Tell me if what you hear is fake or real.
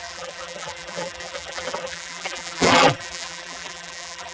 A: fake